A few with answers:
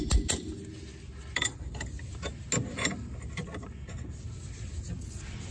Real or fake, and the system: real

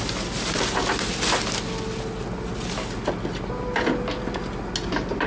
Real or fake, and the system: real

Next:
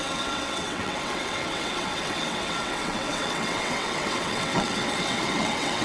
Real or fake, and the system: fake, vocoder, WaveNeXt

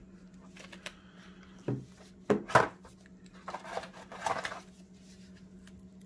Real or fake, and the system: real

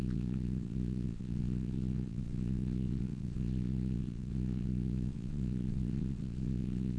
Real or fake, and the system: fake, vocoder, WaveNeXt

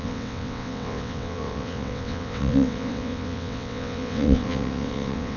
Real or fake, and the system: fake, vocoder, WaveNeXt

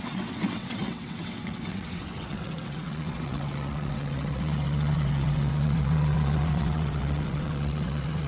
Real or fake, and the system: fake, vocoder, WaveNeXt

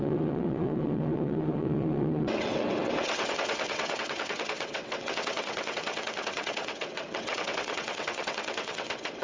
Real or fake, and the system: fake, vocoder, WaveNeXt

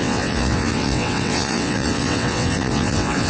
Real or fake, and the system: fake, vocoder, WaveNeXt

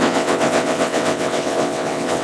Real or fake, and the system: fake, vocoder, WaveNeXt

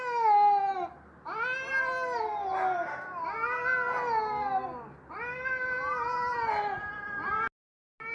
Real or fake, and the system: real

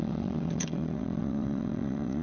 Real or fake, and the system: fake, vocoder, WaveNeXt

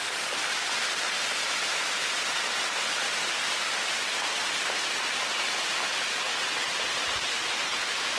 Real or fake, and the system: real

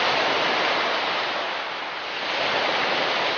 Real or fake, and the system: real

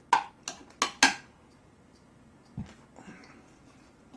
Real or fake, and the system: real